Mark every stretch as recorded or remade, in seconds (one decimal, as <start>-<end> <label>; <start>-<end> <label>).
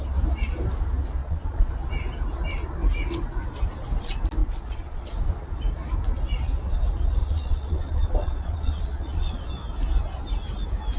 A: 0.0-1.2 recorded; 1.2-1.7 remade; 1.7-4.4 recorded; 4.4-5.1 remade; 5.1-7.2 recorded; 7.2-9.4 remade; 9.4-11.0 recorded